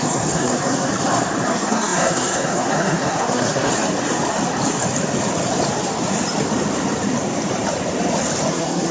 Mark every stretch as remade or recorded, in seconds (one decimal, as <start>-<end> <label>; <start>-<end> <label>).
0.0-0.9 remade; 0.9-1.5 recorded; 1.5-3.7 remade; 3.7-8.5 recorded; 8.5-8.9 remade